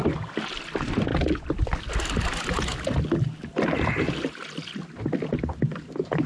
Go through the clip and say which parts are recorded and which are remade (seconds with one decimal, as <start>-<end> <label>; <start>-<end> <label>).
0.0-6.3 recorded